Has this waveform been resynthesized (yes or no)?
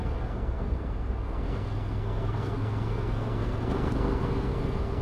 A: yes